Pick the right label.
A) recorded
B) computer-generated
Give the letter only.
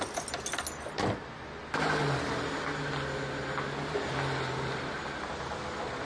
A